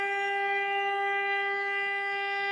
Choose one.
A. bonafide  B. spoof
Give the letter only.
A